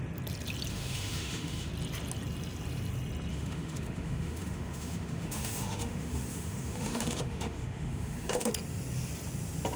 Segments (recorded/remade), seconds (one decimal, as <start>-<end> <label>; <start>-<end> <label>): 0.0-0.7 recorded; 0.7-1.7 remade; 1.7-3.3 recorded; 3.3-8.5 remade; 8.5-9.8 recorded